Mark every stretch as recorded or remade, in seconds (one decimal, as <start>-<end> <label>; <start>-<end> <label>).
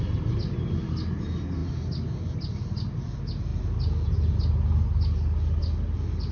0.0-6.3 recorded